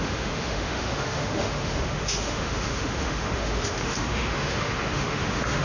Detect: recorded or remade remade